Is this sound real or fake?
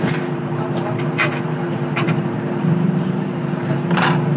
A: fake